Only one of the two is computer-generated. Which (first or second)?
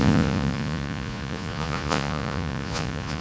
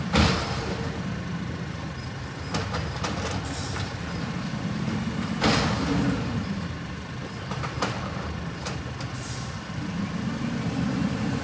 first